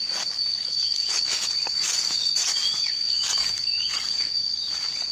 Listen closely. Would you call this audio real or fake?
fake